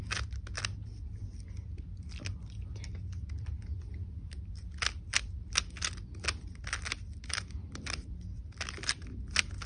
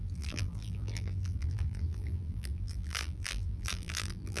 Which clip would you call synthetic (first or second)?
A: second